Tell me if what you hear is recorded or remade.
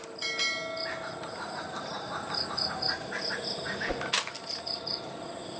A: recorded